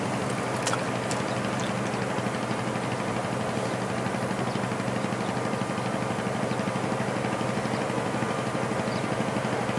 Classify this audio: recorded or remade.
recorded